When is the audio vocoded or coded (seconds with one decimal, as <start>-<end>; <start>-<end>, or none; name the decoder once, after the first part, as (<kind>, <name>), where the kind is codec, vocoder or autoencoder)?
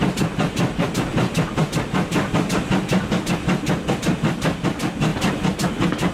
none